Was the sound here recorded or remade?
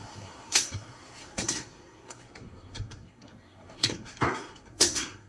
remade